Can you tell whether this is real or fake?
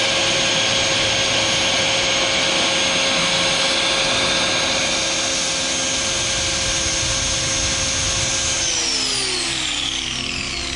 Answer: real